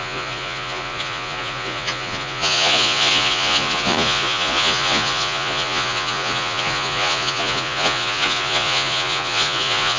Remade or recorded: remade